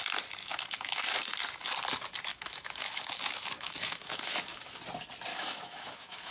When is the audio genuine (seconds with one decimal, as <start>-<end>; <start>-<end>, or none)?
0.0-0.4; 1.2-2.3; 4.8-5.3